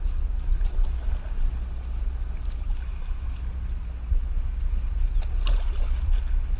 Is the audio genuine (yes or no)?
yes